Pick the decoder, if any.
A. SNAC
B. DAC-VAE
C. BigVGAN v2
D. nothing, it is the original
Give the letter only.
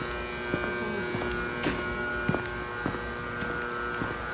D